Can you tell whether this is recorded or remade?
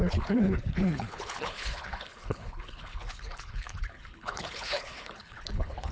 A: remade